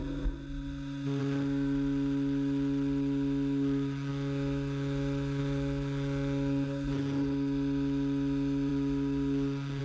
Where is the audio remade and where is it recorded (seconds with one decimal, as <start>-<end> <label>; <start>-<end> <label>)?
0.0-9.8 recorded